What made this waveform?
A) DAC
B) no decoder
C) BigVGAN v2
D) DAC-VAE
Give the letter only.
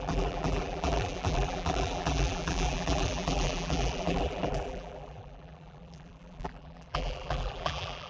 C